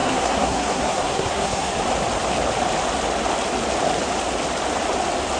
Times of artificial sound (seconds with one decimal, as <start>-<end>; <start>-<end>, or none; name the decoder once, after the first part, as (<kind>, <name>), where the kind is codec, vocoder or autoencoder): 0.0-1.7 (codec, SNAC)